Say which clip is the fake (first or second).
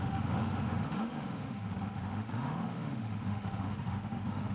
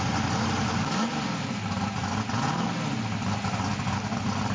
first